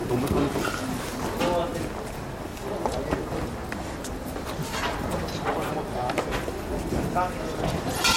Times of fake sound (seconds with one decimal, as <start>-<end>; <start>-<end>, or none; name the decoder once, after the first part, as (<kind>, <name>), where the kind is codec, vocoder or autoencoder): 0.0-1.1 (vocoder, BigVGAN v2); 2.5-6.3